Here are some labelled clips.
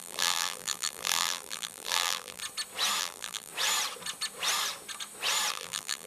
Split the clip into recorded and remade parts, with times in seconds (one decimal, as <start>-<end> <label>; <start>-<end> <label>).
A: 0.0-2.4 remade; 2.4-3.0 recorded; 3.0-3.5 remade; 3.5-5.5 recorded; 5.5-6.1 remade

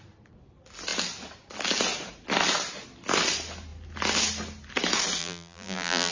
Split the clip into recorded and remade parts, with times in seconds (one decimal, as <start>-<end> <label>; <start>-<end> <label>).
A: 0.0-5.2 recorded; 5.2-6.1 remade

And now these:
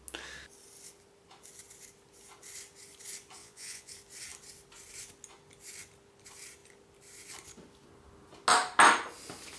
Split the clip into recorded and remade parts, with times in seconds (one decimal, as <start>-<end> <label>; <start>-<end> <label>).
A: 0.0-3.4 recorded; 3.4-3.9 remade; 3.9-9.6 recorded

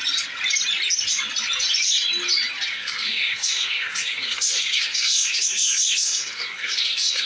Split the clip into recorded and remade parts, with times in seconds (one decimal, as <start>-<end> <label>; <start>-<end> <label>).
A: 0.0-2.7 recorded; 2.7-7.3 remade

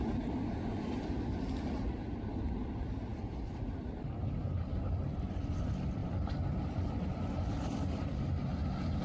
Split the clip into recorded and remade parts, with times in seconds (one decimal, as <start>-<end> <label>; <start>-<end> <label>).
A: 0.0-3.1 recorded; 3.1-3.9 remade; 3.9-4.4 recorded; 4.4-5.3 remade; 5.3-6.0 recorded; 6.0-8.4 remade; 8.4-9.0 recorded

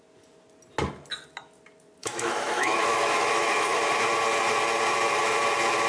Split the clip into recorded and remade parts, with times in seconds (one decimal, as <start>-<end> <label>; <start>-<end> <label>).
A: 0.0-2.0 recorded; 2.0-3.9 remade; 3.9-5.9 recorded